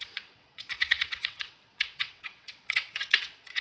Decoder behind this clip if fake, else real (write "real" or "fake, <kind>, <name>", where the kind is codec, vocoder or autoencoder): fake, vocoder, WaveNeXt